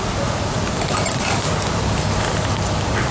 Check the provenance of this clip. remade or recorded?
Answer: recorded